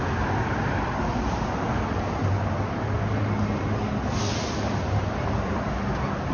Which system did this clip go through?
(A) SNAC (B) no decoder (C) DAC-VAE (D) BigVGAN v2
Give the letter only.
B